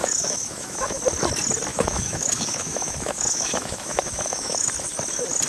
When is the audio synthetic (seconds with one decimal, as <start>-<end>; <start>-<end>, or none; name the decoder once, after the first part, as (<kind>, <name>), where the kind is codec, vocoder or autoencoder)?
0.0-1.0 (autoencoder, DAC-VAE); 1.7-4.7